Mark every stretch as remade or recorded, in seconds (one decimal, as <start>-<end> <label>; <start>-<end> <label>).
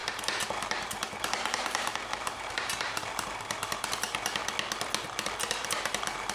0.0-4.4 remade; 4.4-5.5 recorded; 5.5-6.3 remade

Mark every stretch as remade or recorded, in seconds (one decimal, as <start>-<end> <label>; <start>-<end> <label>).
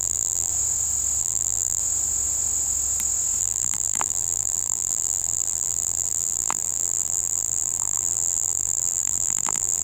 0.0-0.5 remade; 0.5-1.2 recorded; 1.2-1.8 remade; 1.8-3.4 recorded; 3.4-9.8 remade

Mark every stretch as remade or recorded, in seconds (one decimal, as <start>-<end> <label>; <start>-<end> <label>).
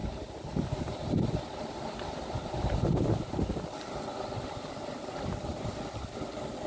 0.0-3.5 remade; 3.5-6.7 recorded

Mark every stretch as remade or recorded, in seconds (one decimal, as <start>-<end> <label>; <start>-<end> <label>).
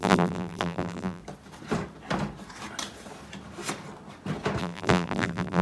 0.0-1.2 remade; 1.2-4.6 recorded; 4.6-5.6 remade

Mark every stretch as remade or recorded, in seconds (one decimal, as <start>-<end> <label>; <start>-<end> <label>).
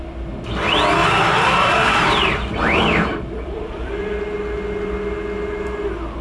0.0-1.0 recorded; 1.0-4.2 remade; 4.2-6.2 recorded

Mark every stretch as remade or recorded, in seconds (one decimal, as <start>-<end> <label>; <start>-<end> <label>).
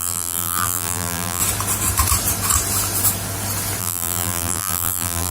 0.0-1.4 remade; 1.4-3.8 recorded; 3.8-5.3 remade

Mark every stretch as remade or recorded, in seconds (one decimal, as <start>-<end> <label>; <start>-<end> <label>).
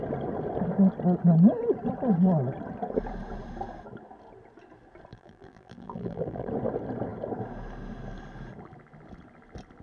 0.0-5.1 recorded; 5.1-6.5 remade; 6.5-9.8 recorded